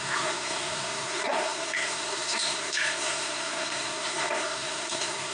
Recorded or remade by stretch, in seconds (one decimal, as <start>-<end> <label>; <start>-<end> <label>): 0.0-5.3 remade